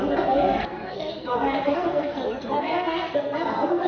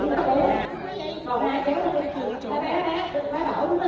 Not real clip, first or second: first